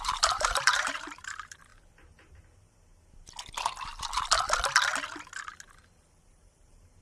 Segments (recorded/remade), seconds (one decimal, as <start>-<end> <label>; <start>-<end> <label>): 0.0-1.7 remade; 1.7-5.9 recorded; 5.9-7.0 remade